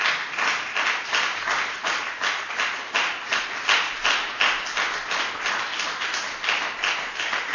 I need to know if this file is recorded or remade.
recorded